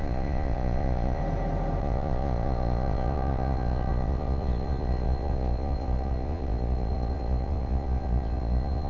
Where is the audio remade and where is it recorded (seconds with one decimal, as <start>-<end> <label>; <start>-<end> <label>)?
0.0-1.2 remade; 1.2-1.8 recorded; 1.8-8.9 remade